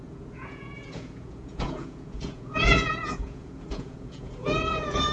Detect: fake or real fake